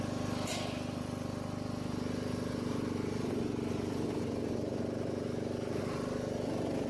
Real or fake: real